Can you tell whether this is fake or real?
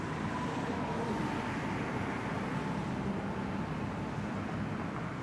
real